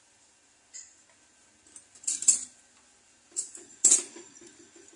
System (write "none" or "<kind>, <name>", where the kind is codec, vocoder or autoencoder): none